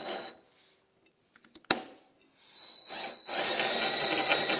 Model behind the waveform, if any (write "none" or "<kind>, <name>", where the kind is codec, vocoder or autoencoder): none